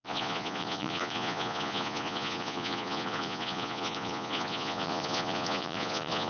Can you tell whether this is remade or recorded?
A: remade